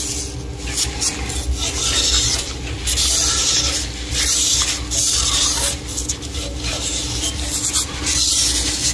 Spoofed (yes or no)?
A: no